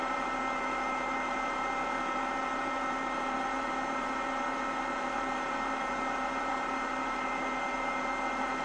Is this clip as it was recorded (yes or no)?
no